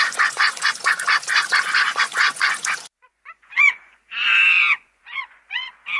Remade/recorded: remade